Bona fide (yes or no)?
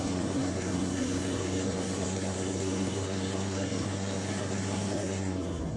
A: no